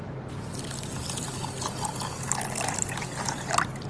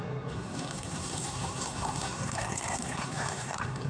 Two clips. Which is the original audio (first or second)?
first